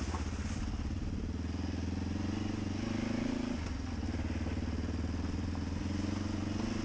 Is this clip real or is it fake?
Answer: real